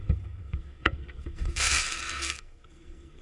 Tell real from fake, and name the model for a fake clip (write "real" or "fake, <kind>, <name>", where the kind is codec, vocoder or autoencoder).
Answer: fake, codec, SNAC